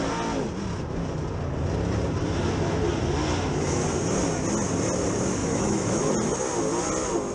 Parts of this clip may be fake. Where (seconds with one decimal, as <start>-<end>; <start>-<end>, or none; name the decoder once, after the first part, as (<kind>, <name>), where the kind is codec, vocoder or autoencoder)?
5.4-6.1 (autoencoder, DAC-VAE)